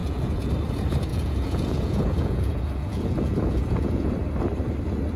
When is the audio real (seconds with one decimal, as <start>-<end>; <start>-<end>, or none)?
0.5-1.1; 4.1-5.2